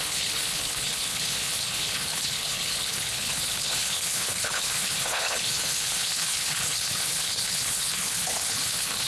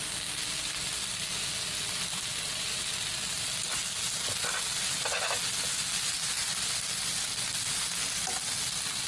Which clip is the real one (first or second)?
second